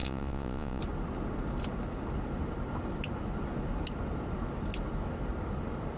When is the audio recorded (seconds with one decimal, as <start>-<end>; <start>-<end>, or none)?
0.8-6.0